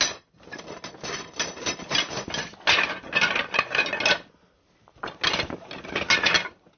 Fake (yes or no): no